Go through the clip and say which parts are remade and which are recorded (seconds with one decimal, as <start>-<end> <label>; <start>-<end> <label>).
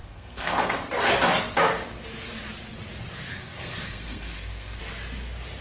0.0-0.8 remade; 0.8-3.3 recorded; 3.3-4.8 remade; 4.8-5.6 recorded